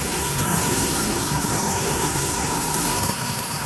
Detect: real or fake fake